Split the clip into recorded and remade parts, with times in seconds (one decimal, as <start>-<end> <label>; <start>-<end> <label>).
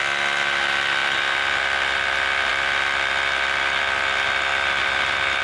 0.0-5.4 recorded